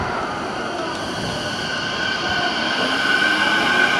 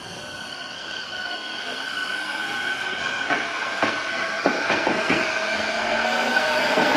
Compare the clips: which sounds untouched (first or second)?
first